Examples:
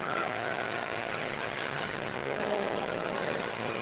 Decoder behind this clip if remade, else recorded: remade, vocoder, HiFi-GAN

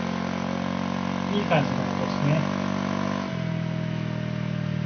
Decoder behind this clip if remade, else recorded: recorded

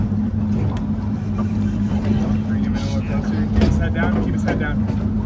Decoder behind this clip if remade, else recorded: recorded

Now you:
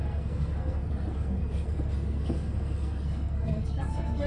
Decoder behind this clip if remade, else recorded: remade, codec, SNAC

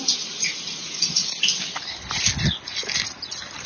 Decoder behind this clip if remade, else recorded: recorded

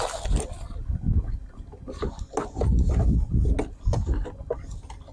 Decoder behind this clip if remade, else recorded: recorded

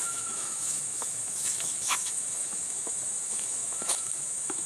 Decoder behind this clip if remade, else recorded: remade, autoencoder, DAC-VAE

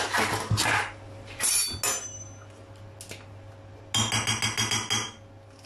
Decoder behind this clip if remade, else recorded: recorded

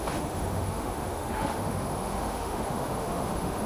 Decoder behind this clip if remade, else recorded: remade, autoencoder, DAC-VAE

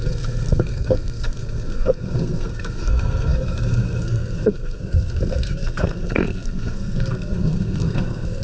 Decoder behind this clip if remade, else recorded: remade, codec, SNAC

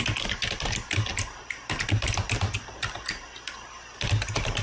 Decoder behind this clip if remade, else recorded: recorded